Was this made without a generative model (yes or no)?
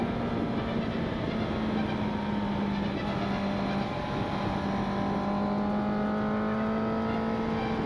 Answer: yes